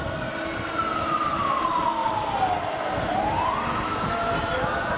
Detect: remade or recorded recorded